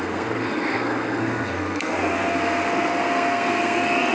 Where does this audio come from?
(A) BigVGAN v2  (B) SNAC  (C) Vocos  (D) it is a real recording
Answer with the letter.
B